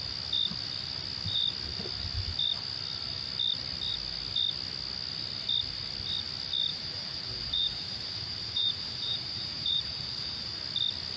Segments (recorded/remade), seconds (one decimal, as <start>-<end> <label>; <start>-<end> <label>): 0.0-6.7 recorded; 6.7-10.6 remade; 10.6-11.2 recorded